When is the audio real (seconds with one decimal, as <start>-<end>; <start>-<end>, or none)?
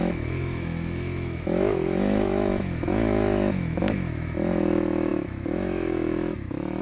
none